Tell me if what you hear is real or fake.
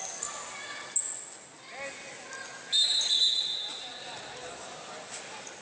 real